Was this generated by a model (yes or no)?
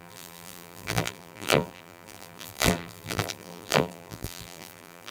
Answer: yes